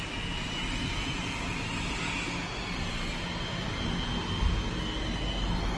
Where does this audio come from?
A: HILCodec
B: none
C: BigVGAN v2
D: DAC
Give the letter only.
B